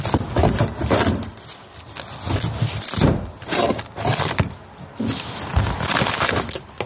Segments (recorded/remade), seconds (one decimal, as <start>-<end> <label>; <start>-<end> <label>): 0.0-0.4 recorded; 0.4-4.5 remade; 4.5-5.5 recorded; 5.5-6.1 remade; 6.1-6.9 recorded

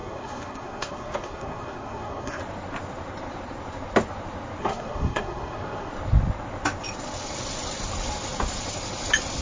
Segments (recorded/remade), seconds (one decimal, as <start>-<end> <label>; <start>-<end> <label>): 0.0-2.4 remade; 2.4-4.6 recorded; 4.6-5.9 remade; 5.9-9.4 recorded

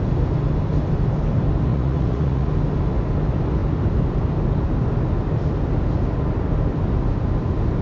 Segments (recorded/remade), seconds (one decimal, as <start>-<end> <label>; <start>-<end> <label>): 0.0-1.7 recorded; 1.7-2.5 remade; 2.5-7.8 recorded

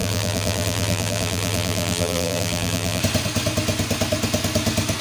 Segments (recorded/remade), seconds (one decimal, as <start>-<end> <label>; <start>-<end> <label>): 0.0-3.0 remade; 3.0-5.0 recorded

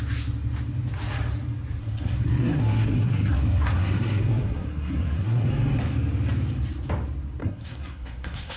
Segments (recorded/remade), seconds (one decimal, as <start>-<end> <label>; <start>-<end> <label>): 0.0-1.8 recorded; 1.8-5.5 remade; 5.5-7.4 recorded; 7.4-8.6 remade

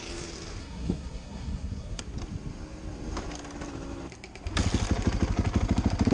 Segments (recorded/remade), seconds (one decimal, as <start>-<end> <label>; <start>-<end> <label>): 0.0-0.6 recorded; 0.6-2.0 remade; 2.0-6.1 recorded

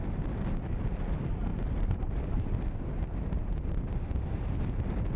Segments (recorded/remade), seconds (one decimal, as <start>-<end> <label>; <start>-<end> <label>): 0.0-1.5 recorded; 1.5-4.6 remade; 4.6-5.2 recorded